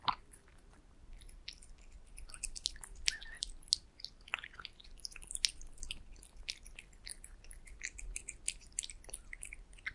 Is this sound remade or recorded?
recorded